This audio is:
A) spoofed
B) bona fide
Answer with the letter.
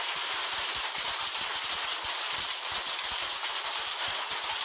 B